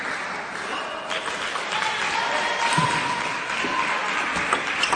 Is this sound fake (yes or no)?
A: no